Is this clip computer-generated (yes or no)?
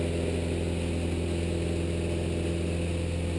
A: no